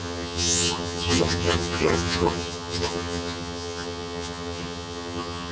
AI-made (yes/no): yes